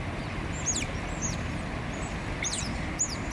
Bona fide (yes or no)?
yes